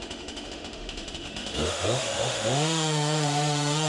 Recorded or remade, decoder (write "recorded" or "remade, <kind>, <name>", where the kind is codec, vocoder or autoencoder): remade, autoencoder, DAC-VAE